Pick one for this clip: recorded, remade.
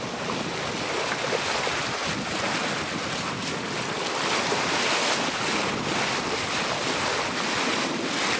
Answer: recorded